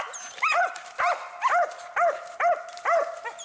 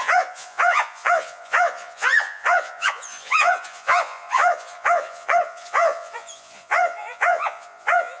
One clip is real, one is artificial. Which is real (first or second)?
first